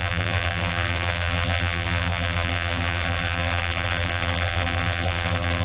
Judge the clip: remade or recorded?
remade